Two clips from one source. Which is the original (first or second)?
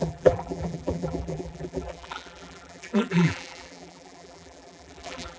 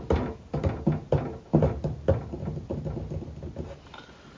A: second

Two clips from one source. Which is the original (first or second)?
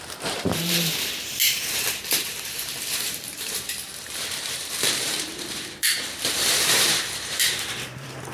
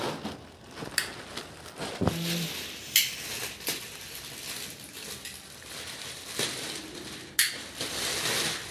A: second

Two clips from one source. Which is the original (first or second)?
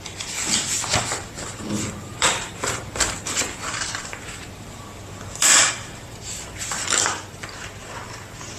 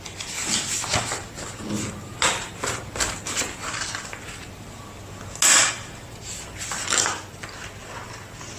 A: second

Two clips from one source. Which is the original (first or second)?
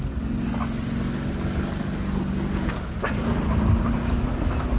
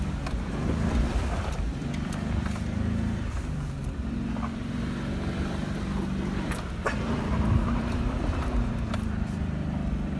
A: first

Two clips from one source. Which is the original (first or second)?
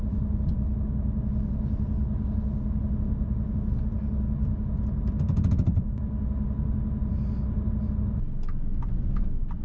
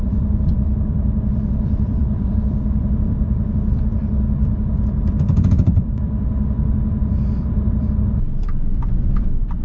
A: first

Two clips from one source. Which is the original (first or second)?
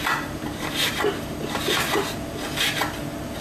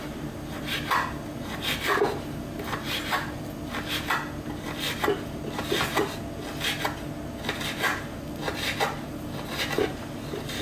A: second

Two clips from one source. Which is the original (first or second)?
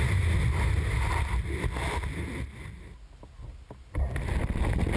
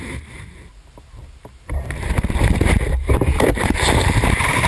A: first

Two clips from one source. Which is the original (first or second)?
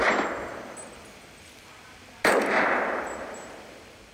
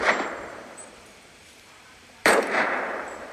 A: first